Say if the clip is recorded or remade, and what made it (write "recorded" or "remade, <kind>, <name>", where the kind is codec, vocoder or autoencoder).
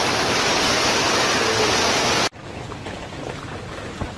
recorded